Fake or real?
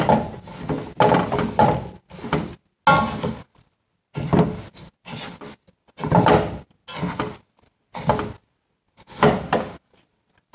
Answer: real